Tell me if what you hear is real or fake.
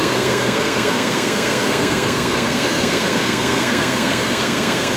fake